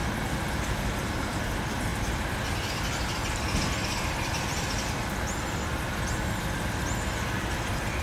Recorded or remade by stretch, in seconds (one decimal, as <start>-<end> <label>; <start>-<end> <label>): 0.0-8.0 recorded